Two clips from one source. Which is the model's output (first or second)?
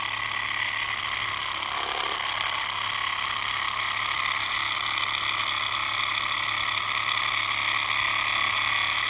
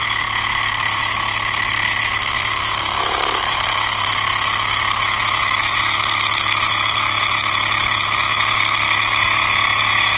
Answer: second